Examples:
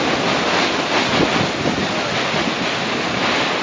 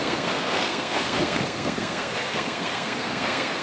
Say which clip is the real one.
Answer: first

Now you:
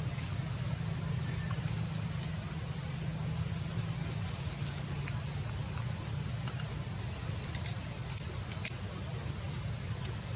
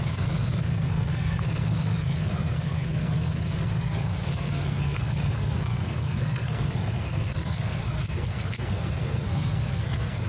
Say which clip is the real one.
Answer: first